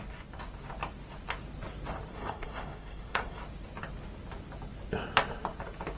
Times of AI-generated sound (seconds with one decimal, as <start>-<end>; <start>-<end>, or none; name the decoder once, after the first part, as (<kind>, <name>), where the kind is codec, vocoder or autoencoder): 2.1-3.4 (codec, SNAC)